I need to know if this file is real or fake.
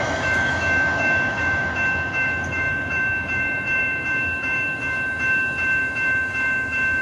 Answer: fake